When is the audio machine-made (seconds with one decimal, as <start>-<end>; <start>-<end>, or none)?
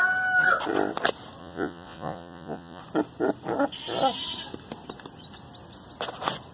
1.4-2.8